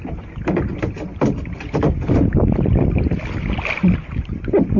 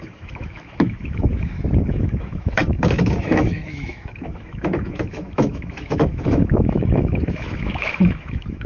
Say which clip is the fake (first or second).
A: second